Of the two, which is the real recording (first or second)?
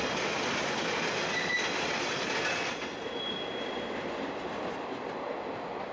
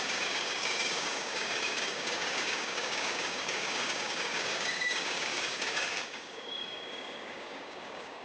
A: first